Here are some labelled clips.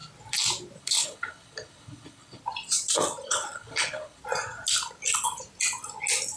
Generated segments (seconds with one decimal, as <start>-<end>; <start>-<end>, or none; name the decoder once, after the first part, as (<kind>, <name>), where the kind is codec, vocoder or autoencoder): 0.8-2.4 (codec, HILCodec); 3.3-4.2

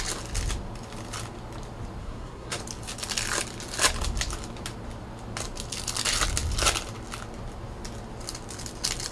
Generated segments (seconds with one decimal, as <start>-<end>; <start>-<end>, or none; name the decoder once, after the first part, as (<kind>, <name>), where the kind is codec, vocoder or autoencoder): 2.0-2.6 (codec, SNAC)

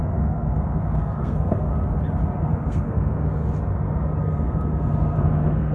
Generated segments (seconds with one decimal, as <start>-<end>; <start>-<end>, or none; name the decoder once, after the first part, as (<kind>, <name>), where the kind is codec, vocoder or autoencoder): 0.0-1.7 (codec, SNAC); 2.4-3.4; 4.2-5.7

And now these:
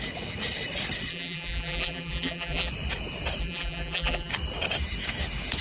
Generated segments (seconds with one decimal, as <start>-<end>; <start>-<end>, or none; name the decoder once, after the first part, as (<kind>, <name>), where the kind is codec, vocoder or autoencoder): 1.1-2.7 (vocoder, BigVGAN v2); 3.4-4.3

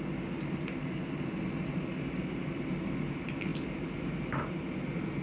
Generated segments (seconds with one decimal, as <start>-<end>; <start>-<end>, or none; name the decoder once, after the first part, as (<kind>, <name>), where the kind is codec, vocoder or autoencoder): none

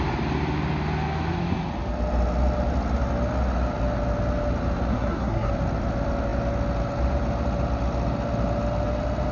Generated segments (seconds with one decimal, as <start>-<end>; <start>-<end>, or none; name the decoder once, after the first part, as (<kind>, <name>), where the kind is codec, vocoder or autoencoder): 4.9-5.5 (codec, SNAC)